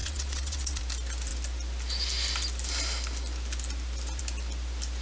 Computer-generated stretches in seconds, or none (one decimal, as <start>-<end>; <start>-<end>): 0.0-0.8